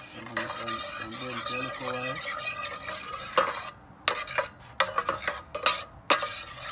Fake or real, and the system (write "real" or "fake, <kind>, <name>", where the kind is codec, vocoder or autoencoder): real